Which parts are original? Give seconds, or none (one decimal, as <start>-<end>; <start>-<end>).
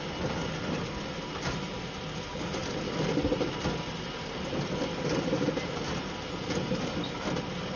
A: 0.0-7.8